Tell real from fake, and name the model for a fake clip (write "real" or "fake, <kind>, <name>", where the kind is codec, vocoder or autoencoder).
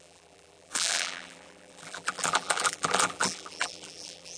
fake, vocoder, BigVGAN v2